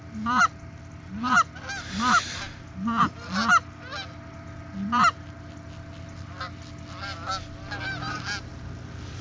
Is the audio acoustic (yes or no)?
yes